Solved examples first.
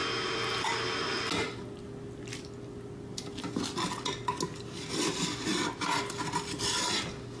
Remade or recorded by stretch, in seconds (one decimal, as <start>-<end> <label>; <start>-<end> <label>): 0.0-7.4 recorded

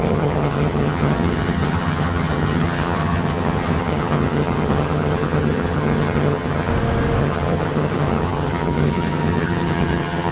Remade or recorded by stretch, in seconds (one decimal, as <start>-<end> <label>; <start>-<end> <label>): 0.0-6.7 remade; 6.7-7.2 recorded; 7.2-10.3 remade

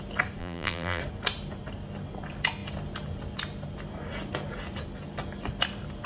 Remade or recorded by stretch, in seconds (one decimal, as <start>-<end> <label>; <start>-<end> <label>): 0.0-0.4 recorded; 0.4-1.0 remade; 1.0-6.1 recorded